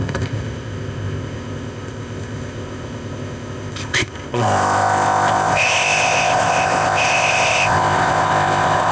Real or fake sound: fake